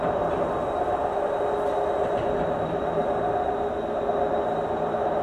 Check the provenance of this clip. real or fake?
real